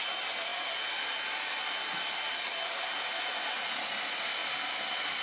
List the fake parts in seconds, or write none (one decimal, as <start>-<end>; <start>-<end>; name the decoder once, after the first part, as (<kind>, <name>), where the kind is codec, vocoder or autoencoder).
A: none